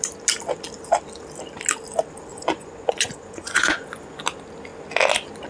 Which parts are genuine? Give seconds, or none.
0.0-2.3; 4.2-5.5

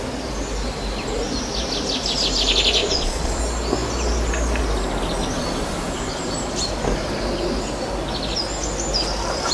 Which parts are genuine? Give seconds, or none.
0.0-2.8; 3.4-9.5

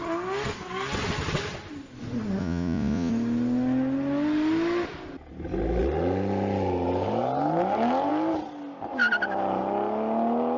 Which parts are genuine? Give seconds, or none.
0.0-2.4; 3.1-10.6